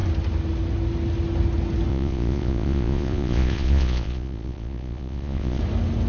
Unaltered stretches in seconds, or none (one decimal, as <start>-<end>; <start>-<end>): 0.0-1.9; 5.6-6.1